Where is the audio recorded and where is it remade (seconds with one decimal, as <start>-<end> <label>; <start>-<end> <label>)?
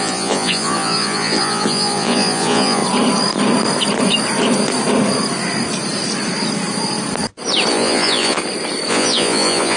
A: 0.0-2.8 remade; 2.8-7.7 recorded; 7.7-8.4 remade; 8.4-8.9 recorded; 8.9-9.8 remade